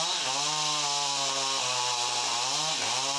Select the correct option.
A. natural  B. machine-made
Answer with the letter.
A